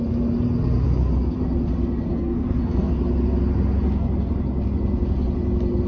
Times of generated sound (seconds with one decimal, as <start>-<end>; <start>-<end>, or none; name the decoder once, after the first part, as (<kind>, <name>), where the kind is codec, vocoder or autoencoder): 2.1-2.9 (codec, SNAC)